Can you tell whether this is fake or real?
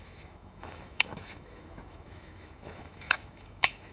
fake